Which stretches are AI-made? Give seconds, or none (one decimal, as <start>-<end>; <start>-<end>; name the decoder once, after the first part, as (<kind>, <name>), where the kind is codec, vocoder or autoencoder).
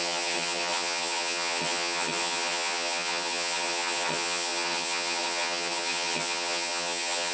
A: 0.0-7.3 (vocoder, HiFi-GAN)